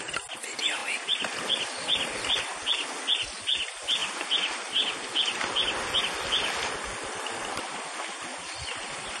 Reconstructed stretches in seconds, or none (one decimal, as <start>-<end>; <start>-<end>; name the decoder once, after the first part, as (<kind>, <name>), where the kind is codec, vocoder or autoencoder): none